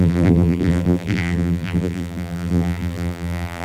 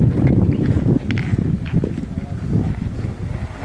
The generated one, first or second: first